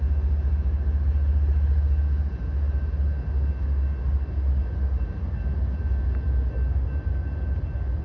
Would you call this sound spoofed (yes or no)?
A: no